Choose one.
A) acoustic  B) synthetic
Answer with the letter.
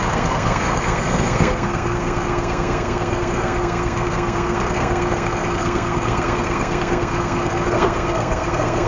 B